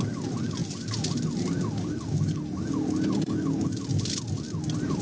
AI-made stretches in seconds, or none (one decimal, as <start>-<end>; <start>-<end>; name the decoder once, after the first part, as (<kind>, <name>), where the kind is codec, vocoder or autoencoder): none